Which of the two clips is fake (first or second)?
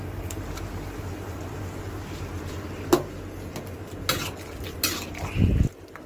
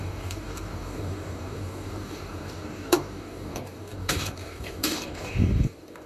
second